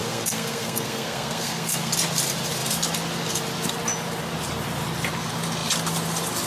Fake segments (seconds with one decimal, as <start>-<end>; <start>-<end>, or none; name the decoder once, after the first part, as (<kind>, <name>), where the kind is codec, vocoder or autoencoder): 0.0-1.9 (codec, SNAC)